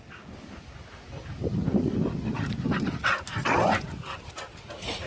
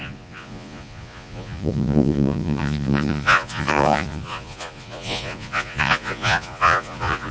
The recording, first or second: first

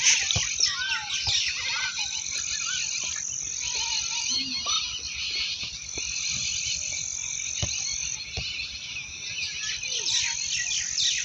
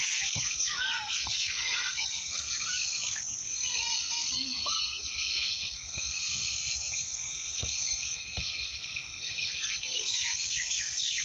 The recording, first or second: first